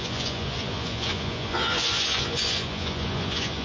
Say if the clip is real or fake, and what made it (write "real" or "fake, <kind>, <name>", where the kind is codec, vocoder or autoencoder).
fake, vocoder, Vocos